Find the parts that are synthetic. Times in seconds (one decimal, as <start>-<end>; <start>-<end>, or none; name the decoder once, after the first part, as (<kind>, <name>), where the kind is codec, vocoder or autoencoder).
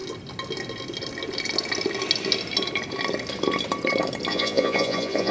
4.3-5.3 (vocoder, Vocos)